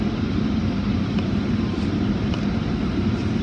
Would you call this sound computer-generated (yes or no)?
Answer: yes